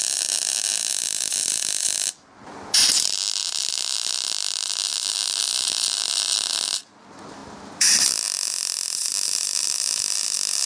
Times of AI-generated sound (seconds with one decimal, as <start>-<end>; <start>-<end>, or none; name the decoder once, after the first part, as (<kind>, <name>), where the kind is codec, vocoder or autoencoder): none